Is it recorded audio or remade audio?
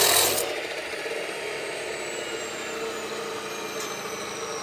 recorded